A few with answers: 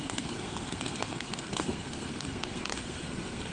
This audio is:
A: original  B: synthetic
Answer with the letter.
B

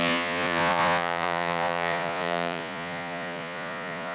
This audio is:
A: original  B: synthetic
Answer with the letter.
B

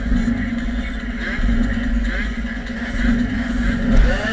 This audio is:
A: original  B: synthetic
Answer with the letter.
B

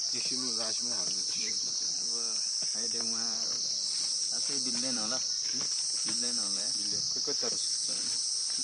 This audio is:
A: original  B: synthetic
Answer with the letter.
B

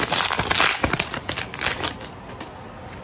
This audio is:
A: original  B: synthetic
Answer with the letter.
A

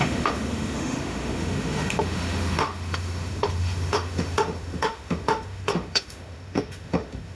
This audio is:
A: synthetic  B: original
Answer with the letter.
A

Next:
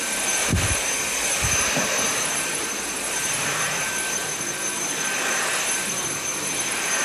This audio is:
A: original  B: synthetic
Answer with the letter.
B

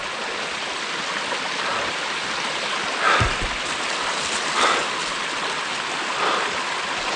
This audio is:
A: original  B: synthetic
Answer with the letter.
A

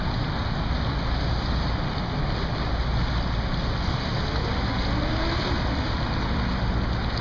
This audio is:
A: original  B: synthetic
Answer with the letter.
A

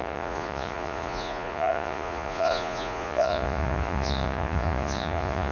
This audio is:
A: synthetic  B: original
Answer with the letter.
A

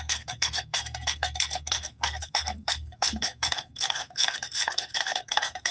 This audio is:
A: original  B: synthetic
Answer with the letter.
B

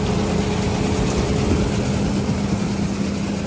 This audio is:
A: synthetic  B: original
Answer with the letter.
B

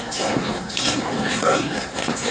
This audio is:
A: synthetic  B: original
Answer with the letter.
A